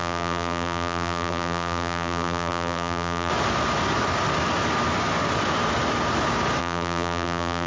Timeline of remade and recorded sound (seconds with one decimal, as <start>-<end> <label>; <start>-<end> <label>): 0.0-3.3 remade; 3.3-6.6 recorded; 6.6-7.7 remade